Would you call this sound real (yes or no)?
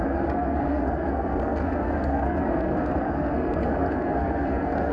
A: no